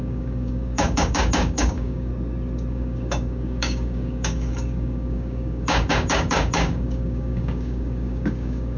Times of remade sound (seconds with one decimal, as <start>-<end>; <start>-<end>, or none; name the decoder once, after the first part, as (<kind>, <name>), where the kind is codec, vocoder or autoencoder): 0.0-2.1 (codec, DAC); 2.7-8.8